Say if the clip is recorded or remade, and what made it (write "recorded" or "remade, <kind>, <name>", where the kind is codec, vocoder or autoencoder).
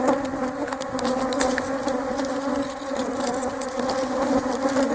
recorded